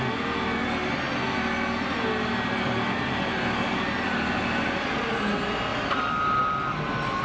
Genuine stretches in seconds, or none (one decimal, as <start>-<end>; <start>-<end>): 0.0-4.4; 5.0-5.7; 6.4-7.2

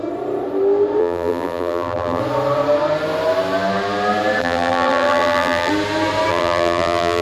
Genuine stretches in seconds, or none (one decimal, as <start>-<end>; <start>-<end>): 0.0-1.0; 2.2-4.4; 5.7-6.3

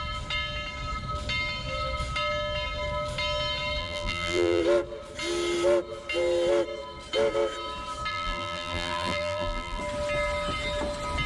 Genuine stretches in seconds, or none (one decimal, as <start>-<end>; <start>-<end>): 0.0-3.8; 4.6-8.1; 9.8-11.3

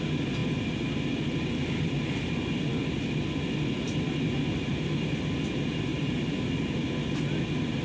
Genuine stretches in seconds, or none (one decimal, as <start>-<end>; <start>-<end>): 0.0-7.8